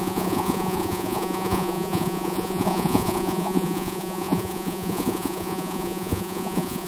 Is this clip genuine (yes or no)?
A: no